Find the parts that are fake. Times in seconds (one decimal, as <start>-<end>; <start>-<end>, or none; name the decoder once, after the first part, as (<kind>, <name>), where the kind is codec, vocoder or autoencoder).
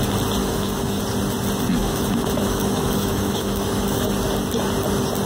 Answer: 0.4-1.0 (autoencoder, DAC-VAE); 1.8-4.1